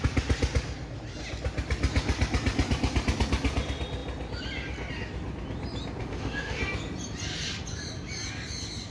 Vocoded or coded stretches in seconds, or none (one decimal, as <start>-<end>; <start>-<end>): 6.0-6.6